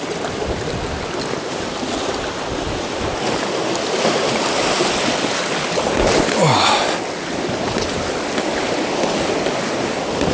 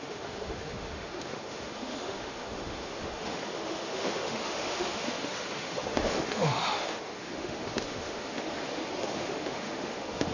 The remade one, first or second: second